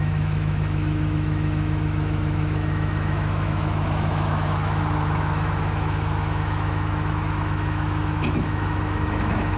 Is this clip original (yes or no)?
no